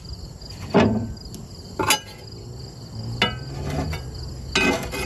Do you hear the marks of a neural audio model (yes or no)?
no